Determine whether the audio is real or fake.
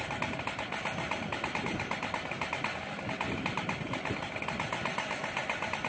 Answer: real